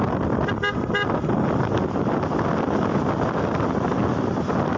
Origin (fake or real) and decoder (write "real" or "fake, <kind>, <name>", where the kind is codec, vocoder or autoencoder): real